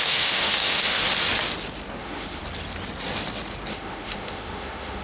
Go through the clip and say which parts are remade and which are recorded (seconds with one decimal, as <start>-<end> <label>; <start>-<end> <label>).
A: 0.0-1.0 remade; 1.0-2.0 recorded; 2.0-2.4 remade; 2.4-3.7 recorded; 3.7-5.0 remade